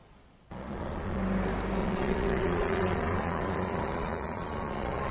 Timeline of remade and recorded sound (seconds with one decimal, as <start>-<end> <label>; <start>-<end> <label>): 0.0-1.2 remade; 1.2-1.8 recorded; 1.8-5.1 remade